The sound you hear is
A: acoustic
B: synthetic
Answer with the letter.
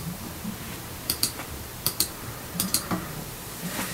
B